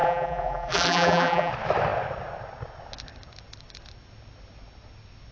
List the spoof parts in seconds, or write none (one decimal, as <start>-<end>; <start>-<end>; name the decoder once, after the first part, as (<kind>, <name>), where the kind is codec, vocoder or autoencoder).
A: 0.0-1.5 (vocoder, BigVGAN v2)